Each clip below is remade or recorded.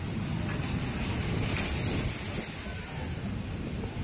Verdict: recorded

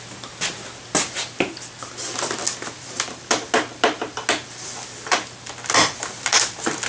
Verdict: recorded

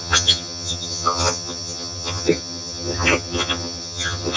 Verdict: remade